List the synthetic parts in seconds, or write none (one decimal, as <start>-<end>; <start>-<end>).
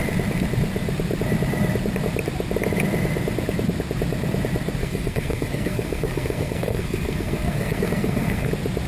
4.8-8.5